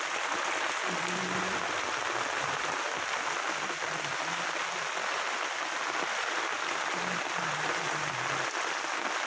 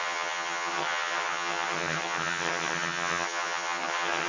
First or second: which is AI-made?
second